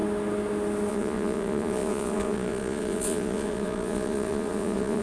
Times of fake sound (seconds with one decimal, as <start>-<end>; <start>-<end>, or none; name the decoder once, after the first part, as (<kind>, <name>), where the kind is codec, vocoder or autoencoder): 0.9-5.0 (vocoder, Vocos)